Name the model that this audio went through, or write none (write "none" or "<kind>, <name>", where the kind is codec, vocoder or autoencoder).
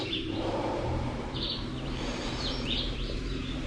vocoder, BigVGAN v2